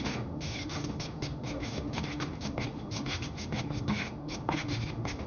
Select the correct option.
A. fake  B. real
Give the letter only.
A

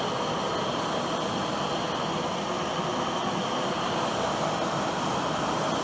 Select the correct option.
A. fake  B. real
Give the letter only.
B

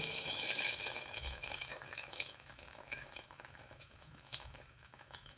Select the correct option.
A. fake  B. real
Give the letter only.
A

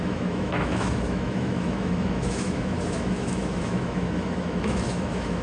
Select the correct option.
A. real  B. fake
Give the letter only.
B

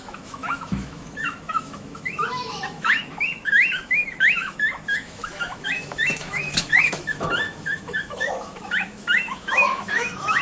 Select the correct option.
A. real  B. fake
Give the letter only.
B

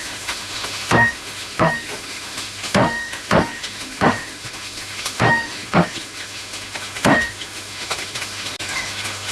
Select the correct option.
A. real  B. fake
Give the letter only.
B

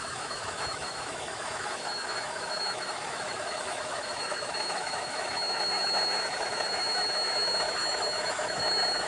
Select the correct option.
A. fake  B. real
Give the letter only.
A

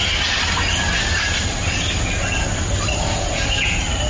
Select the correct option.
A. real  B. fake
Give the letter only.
A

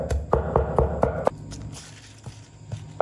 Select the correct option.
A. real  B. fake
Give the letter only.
A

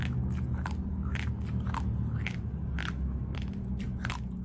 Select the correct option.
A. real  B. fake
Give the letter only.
A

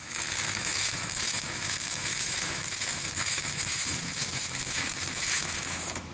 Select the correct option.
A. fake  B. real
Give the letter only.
A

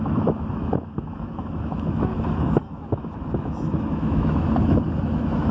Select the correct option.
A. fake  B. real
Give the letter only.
A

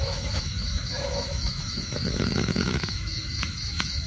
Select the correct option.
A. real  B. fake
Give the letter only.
B